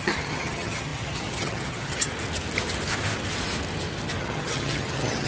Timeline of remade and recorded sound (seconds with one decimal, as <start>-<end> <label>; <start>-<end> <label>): 0.0-2.1 remade; 2.1-4.2 recorded; 4.2-5.3 remade